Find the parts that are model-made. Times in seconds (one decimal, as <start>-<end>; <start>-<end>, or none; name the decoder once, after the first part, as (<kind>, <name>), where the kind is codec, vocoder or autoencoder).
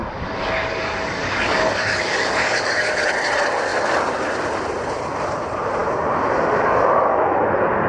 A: 0.0-2.9 (codec, DAC)